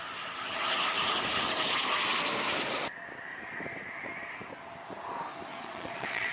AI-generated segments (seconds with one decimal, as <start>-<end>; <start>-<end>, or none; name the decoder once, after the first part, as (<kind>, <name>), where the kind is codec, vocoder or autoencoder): 5.5-6.3 (vocoder, Vocos)